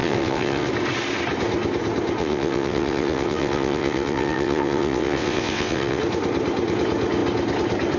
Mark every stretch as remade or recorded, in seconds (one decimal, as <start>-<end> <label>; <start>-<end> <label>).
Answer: 0.0-0.7 remade; 0.7-2.2 recorded; 2.2-6.0 remade; 6.0-8.0 recorded